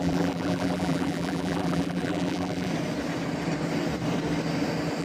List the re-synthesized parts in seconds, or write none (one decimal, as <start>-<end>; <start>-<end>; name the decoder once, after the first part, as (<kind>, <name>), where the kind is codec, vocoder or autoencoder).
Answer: 0.0-2.7 (vocoder, BigVGAN v2)